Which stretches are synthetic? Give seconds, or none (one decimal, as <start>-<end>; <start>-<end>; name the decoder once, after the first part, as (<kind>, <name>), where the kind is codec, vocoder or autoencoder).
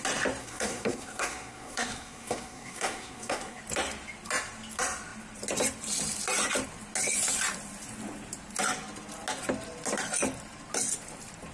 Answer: 0.4-3.6 (codec, SNAC)